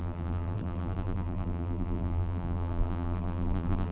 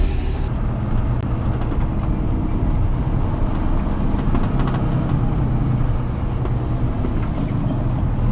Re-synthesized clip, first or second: first